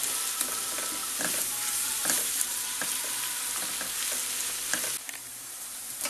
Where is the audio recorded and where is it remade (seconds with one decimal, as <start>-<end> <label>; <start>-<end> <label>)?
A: 0.0-1.0 recorded; 1.0-3.0 remade; 3.0-5.3 recorded; 5.3-6.1 remade